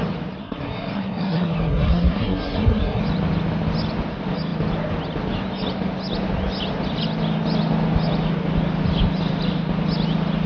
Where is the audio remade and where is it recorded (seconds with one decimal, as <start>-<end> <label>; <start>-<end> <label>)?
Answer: 0.0-0.4 recorded; 0.4-3.0 remade; 3.0-10.5 recorded